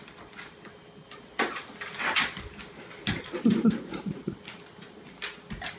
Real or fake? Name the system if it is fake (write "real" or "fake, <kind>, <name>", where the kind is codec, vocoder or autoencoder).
real